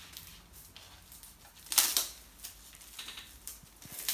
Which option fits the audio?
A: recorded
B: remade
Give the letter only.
A